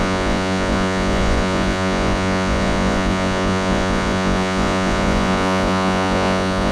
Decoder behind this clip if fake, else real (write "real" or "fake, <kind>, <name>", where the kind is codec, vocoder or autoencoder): fake, vocoder, Vocos